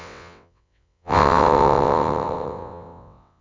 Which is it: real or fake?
fake